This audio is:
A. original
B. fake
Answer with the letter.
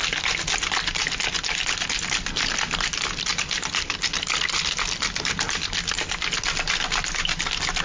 A